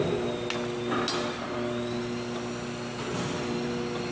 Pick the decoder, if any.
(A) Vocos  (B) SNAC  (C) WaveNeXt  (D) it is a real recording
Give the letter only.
D